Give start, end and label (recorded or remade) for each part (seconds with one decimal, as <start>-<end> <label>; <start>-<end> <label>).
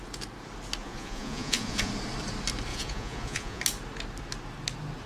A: 0.0-0.8 recorded; 0.8-1.9 remade; 1.9-2.7 recorded; 2.7-3.6 remade; 3.6-5.1 recorded